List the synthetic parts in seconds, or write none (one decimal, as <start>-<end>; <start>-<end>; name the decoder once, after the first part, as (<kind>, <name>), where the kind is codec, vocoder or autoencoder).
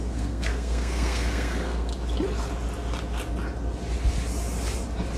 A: 0.0-1.9 (codec, SNAC)